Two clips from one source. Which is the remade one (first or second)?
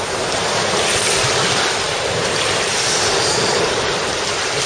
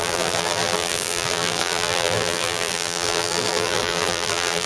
second